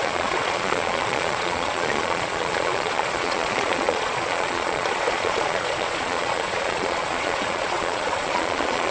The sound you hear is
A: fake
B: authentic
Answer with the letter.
A